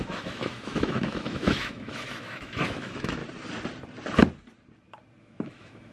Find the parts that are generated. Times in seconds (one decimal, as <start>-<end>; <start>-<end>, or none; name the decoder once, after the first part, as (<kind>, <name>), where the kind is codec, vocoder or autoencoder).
0.0-3.2 (autoencoder, DAC-VAE); 5.2-5.9